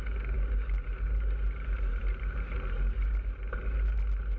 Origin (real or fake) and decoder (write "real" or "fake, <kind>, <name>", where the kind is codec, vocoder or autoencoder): real